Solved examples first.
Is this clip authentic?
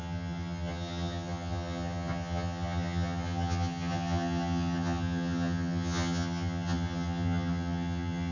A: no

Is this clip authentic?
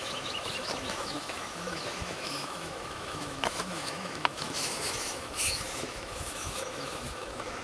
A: no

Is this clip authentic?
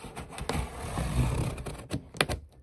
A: yes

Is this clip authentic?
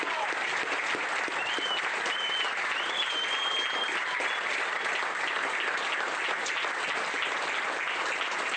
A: yes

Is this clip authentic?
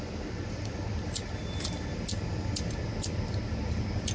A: yes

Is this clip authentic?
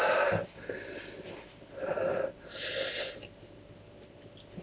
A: yes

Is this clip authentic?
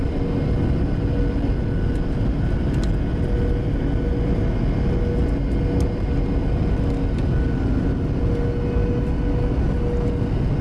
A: yes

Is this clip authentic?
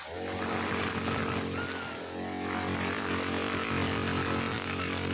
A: yes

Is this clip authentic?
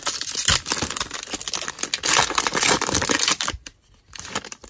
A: yes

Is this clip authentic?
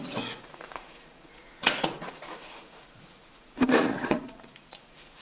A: no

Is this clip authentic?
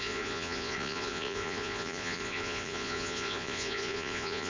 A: no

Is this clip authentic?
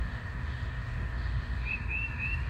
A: no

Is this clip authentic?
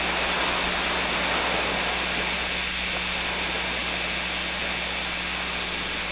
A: yes